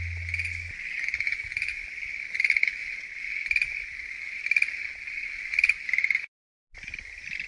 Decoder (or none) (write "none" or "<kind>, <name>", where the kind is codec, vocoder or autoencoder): none